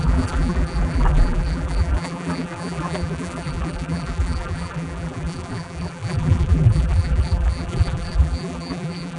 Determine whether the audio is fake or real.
fake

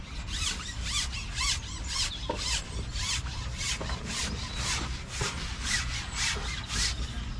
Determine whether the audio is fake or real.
real